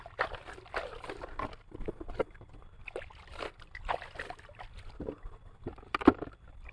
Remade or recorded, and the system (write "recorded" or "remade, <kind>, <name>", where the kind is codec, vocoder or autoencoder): recorded